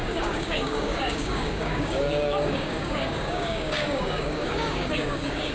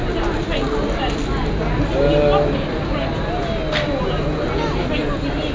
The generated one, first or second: first